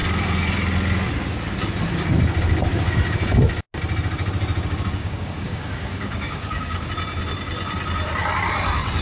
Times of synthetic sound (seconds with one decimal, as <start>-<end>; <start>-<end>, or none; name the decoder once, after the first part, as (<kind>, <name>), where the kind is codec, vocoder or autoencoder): 5.0-6.9 (codec, DAC)